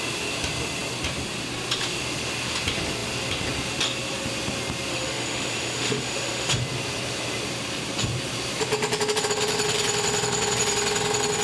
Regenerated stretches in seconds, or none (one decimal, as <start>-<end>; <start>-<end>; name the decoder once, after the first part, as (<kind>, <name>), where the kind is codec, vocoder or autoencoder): 4.9-6.6 (autoencoder, DAC-VAE)